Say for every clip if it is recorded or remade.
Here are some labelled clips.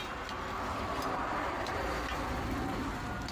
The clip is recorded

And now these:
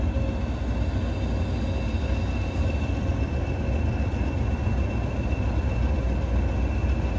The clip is recorded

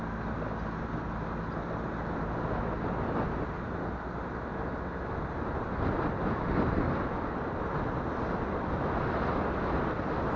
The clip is recorded